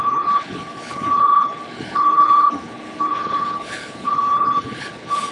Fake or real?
fake